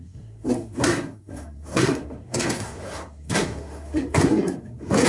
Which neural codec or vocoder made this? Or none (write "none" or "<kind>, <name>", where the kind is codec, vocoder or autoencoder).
codec, SNAC